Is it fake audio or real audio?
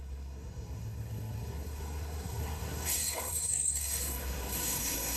fake